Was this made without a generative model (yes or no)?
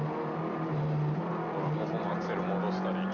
yes